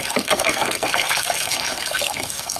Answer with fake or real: fake